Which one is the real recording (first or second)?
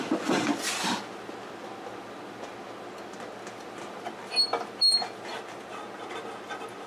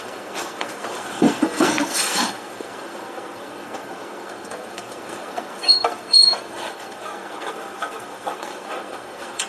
first